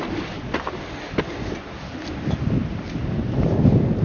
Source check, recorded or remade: recorded